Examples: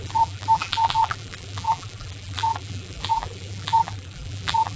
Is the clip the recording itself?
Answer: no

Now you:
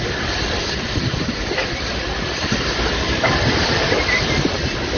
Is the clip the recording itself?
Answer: no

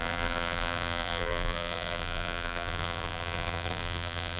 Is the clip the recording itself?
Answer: no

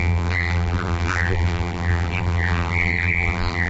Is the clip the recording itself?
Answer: no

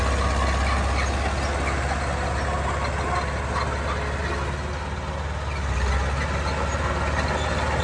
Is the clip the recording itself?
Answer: yes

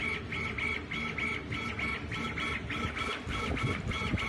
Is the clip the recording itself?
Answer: yes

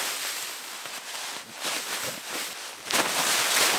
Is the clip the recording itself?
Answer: yes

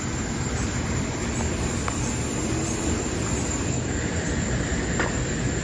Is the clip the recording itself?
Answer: no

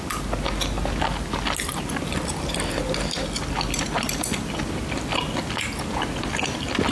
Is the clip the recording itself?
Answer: yes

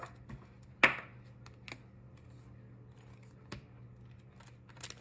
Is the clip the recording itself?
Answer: yes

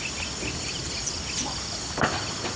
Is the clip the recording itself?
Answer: yes